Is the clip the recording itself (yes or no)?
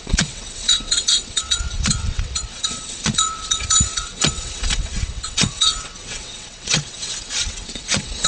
no